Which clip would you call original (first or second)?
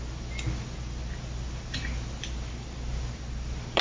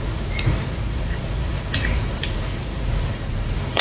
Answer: first